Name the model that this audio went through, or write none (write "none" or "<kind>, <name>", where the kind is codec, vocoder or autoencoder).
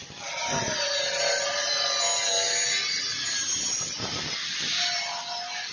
none